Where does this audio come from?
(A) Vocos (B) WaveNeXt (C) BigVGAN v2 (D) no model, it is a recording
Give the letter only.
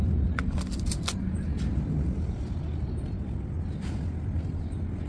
D